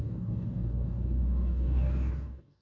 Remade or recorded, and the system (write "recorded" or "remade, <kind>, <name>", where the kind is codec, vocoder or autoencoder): remade, codec, DAC